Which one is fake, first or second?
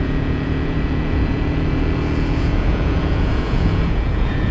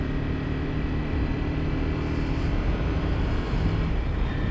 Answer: first